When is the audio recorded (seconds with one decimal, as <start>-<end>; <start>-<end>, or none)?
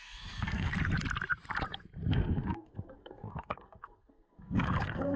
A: 0.7-2.1